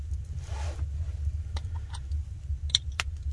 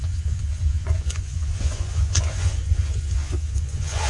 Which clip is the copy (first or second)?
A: second